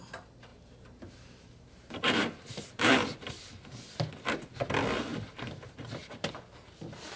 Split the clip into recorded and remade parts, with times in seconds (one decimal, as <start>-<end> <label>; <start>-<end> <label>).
0.0-0.5 recorded; 0.5-3.3 remade; 3.3-5.1 recorded; 5.1-6.3 remade; 6.3-7.2 recorded